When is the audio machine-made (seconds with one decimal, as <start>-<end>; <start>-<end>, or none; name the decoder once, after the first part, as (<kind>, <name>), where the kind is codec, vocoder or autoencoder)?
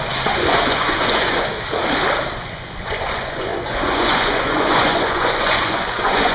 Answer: 0.0-1.5 (vocoder, Vocos); 2.4-6.3